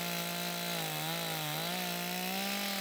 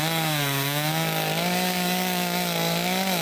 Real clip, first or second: first